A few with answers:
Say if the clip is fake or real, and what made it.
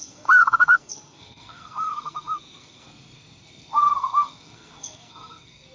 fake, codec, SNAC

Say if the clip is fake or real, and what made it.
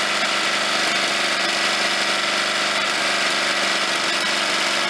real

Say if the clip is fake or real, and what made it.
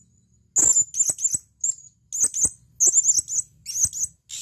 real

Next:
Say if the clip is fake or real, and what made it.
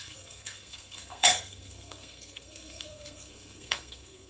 fake, codec, SNAC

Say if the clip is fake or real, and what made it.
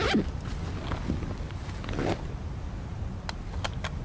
real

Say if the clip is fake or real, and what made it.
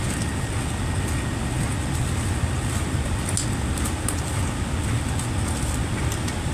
real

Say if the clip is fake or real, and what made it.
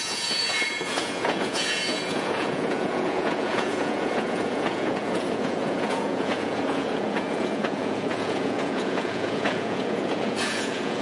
fake, vocoder, Vocos